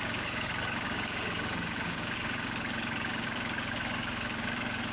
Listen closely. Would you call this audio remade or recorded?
remade